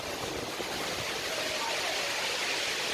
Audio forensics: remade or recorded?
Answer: recorded